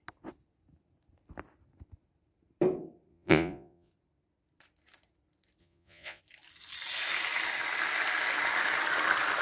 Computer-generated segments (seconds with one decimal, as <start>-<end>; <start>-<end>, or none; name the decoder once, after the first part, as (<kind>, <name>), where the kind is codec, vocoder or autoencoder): 3.1-3.9 (vocoder, Vocos); 5.6-6.2